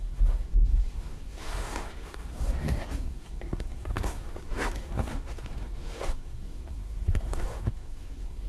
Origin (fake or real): fake